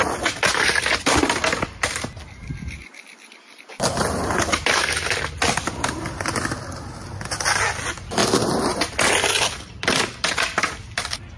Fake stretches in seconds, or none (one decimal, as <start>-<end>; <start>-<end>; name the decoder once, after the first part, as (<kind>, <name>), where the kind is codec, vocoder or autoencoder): none